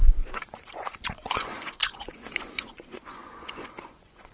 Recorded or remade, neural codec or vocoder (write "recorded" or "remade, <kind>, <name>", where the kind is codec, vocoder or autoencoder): remade, vocoder, Vocos